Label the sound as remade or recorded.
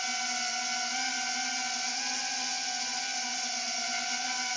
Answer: recorded